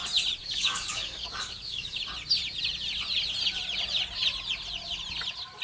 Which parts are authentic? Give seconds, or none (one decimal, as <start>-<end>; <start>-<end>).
0.0-0.4; 2.0-5.6